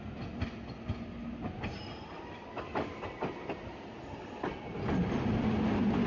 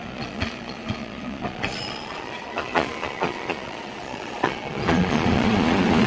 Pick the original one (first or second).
first